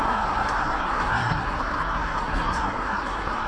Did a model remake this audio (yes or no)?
yes